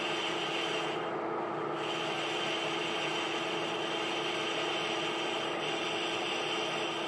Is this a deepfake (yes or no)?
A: no